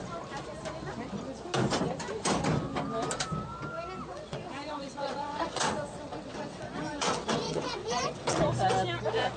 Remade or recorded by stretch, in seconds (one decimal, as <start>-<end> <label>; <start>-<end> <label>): 0.0-4.1 recorded; 4.1-8.4 remade; 8.4-9.4 recorded